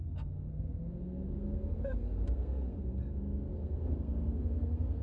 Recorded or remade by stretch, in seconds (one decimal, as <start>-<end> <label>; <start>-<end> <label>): 0.0-3.0 remade; 3.0-3.5 recorded; 3.5-5.0 remade